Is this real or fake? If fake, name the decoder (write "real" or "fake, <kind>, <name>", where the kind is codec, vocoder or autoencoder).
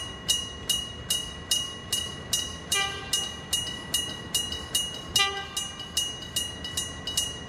real